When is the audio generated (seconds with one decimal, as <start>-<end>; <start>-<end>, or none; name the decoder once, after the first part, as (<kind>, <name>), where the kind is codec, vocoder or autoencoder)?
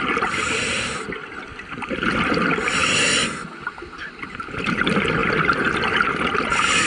none